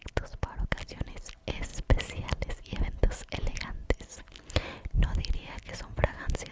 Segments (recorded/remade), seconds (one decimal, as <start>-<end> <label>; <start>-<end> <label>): 0.0-6.5 recorded